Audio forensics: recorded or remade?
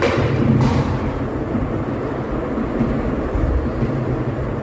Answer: recorded